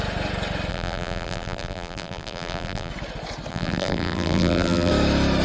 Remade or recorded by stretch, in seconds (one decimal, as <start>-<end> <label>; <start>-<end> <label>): 0.0-0.7 recorded; 0.7-2.9 remade; 2.9-3.5 recorded; 3.5-4.9 remade; 4.9-5.4 recorded